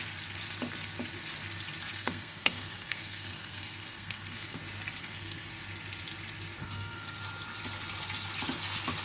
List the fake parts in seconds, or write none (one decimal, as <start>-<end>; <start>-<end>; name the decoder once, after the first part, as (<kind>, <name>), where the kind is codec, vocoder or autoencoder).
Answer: 1.9-4.6 (codec, SNAC); 5.0-5.5; 6.6-7.2